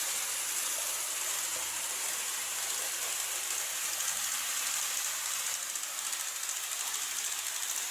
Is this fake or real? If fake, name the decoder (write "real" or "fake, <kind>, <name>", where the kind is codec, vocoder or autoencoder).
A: real